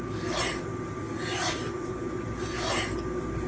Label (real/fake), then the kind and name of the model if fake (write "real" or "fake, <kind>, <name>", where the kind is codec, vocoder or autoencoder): real